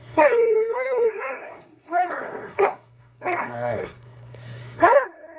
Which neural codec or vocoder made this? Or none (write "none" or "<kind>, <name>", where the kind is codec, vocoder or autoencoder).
codec, SNAC